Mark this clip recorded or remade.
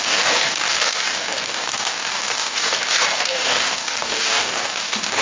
remade